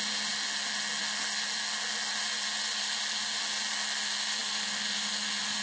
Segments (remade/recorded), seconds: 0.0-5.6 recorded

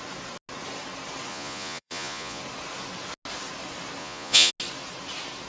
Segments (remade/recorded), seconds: 0.0-1.3 recorded; 1.3-2.4 remade; 2.4-4.0 recorded; 4.0-4.5 remade; 4.5-5.5 recorded

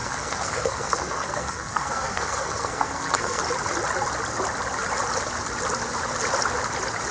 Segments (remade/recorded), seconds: 0.0-3.4 remade; 3.4-7.1 recorded